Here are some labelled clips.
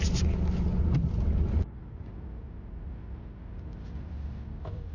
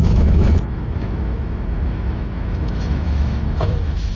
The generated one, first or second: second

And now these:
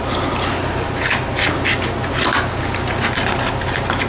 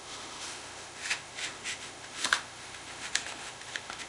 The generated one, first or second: second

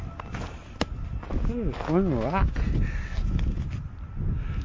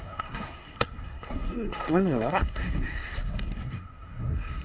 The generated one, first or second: second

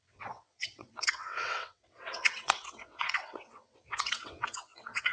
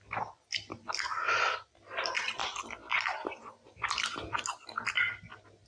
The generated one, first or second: first